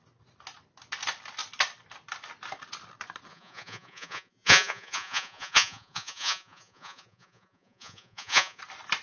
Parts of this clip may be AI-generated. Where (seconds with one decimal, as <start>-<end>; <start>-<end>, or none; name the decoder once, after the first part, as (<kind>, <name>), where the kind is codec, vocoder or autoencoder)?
3.3-8.6 (vocoder, Vocos)